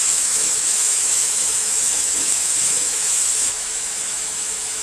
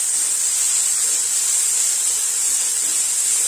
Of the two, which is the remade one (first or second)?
first